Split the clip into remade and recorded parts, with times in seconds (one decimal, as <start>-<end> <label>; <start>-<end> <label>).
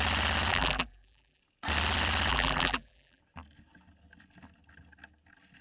0.0-0.5 recorded; 0.5-1.4 remade; 1.4-2.3 recorded; 2.3-3.2 remade; 3.2-5.6 recorded